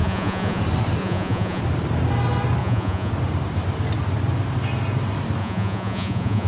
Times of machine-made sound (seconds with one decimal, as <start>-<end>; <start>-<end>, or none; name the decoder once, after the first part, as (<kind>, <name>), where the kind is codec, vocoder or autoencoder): 0.0-0.6 (vocoder, Vocos); 1.0-1.6; 2.6-3.1; 5.4-6.5